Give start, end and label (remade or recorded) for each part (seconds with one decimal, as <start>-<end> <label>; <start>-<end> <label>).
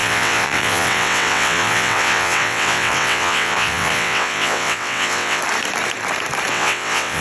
0.0-5.4 remade; 5.4-6.5 recorded; 6.5-7.2 remade